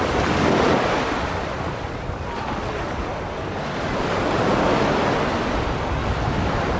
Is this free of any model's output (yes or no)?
yes